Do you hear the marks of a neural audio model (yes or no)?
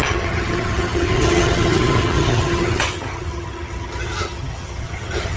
yes